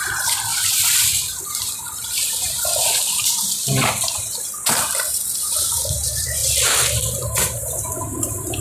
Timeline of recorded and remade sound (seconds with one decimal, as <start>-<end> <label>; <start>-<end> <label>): 0.0-6.4 remade; 6.4-7.2 recorded; 7.2-8.6 remade